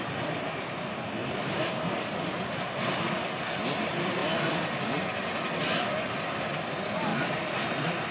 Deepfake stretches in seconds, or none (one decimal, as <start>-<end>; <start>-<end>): 1.2-2.9; 7.1-8.1